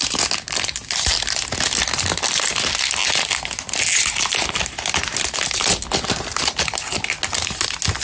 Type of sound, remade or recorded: recorded